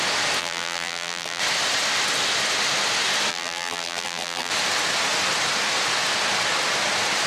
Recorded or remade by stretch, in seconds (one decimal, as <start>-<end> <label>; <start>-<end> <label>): 0.0-0.4 recorded; 0.4-1.4 remade; 1.4-3.3 recorded; 3.3-4.5 remade; 4.5-7.3 recorded